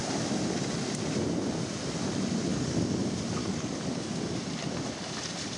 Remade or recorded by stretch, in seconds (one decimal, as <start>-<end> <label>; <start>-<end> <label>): 0.0-2.5 recorded; 2.5-3.0 remade; 3.0-3.4 recorded; 3.4-4.1 remade; 4.1-5.6 recorded